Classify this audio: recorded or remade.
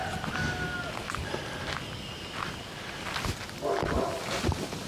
recorded